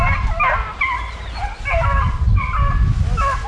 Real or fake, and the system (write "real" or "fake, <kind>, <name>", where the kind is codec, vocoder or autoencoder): real